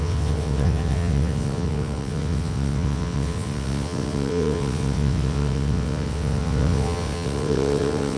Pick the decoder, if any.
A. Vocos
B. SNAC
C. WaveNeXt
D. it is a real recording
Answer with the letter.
C